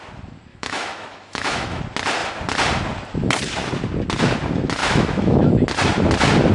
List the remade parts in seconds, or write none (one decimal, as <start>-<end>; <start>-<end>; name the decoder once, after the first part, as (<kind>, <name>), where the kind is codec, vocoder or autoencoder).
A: 0.5-1.8 (autoencoder, DAC-VAE); 4.8-5.5